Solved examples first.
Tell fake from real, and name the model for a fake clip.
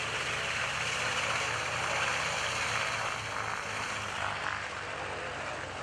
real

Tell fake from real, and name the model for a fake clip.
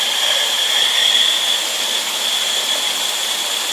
fake, vocoder, BigVGAN v2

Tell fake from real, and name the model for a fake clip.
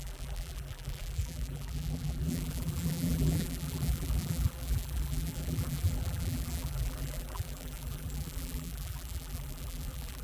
fake, vocoder, BigVGAN v2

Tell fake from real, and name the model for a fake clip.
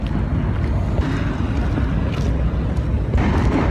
real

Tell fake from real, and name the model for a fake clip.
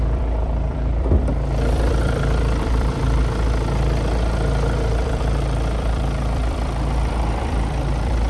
fake, vocoder, BigVGAN v2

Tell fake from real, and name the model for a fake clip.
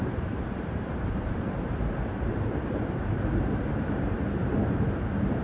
fake, vocoder, BigVGAN v2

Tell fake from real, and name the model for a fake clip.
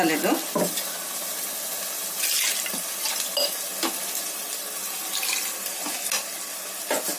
real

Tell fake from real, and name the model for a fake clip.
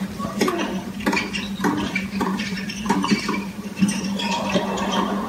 fake, vocoder, BigVGAN v2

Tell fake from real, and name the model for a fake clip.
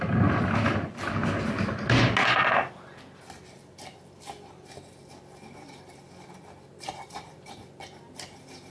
real